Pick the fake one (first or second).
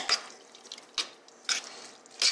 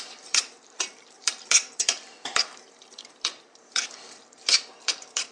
second